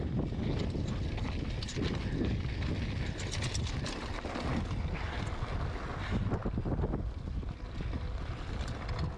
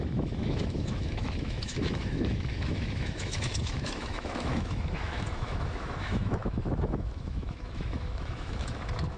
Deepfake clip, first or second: second